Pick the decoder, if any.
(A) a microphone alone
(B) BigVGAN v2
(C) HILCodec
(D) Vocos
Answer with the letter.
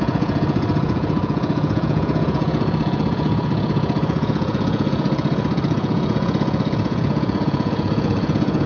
D